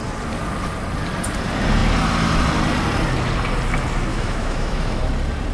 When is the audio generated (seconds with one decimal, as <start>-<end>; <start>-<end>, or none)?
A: 4.1-5.0

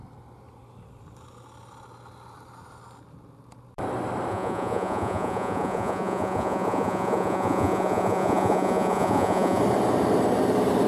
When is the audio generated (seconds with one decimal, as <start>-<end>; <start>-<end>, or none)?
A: 4.3-9.6